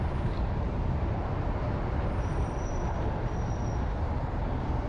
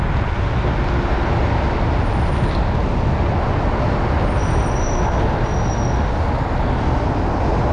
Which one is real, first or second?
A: second